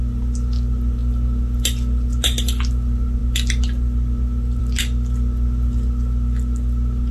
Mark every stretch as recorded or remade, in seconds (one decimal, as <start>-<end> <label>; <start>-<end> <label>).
0.0-7.1 recorded